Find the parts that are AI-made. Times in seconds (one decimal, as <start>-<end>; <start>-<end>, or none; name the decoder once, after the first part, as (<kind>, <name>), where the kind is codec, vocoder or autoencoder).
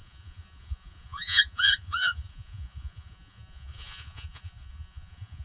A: 0.0-5.4 (vocoder, Vocos)